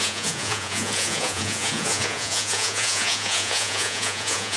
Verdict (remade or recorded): remade